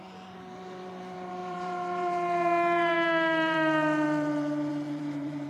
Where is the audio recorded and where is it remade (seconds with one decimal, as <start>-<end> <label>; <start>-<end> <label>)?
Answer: 0.0-5.5 remade